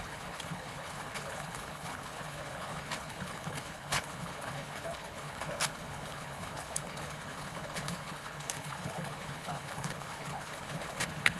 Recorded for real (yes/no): no